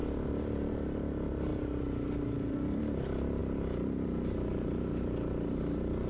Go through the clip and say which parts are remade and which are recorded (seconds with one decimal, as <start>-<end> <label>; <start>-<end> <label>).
0.0-6.1 recorded